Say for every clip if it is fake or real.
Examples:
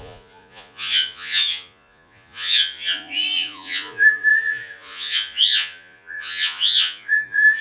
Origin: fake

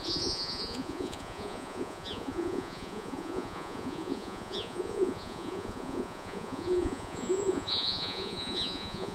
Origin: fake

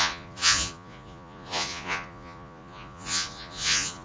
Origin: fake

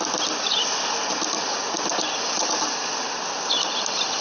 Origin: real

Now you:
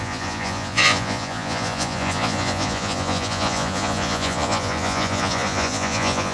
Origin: fake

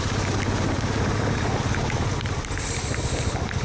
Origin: real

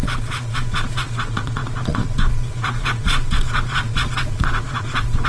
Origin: fake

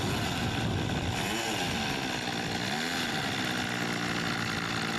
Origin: real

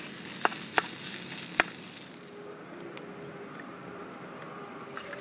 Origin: real